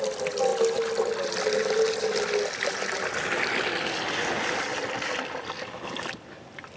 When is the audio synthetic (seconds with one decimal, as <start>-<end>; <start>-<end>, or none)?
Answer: none